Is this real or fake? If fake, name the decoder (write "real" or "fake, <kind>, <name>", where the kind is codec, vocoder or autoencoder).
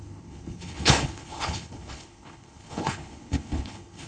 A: fake, codec, HILCodec